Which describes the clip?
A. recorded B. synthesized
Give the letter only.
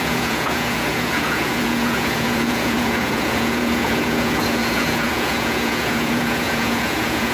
B